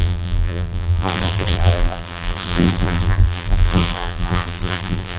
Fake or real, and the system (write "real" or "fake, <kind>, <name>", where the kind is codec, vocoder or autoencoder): fake, vocoder, BigVGAN v2